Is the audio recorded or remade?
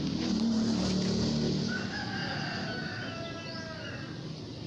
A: recorded